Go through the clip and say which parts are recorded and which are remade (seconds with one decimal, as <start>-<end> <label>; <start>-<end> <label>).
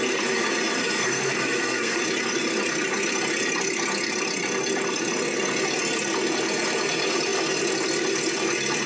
0.0-0.8 recorded; 0.8-2.0 remade; 2.0-8.9 recorded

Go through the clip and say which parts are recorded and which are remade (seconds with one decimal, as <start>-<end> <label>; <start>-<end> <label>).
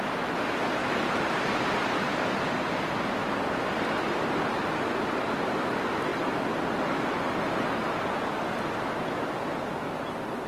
0.0-0.8 recorded; 0.8-2.3 remade; 2.3-10.5 recorded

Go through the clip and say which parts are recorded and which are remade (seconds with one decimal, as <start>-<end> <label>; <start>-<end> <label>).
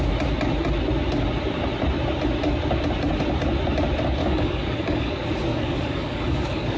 0.0-4.2 recorded; 4.2-5.1 remade; 5.1-5.5 recorded; 5.5-6.8 remade